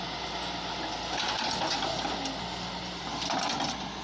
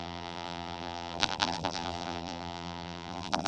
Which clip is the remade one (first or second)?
second